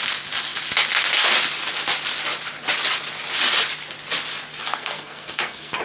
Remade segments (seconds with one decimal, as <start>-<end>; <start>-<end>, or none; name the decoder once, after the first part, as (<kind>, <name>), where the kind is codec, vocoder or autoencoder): 4.6-5.8 (codec, SNAC)